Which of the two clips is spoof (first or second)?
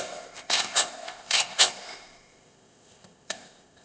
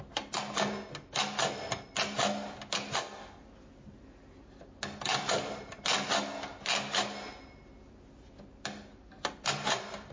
first